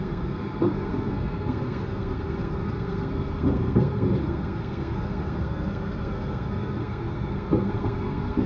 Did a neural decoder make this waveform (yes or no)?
yes